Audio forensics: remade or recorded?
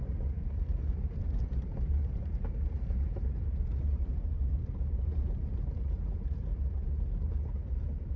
remade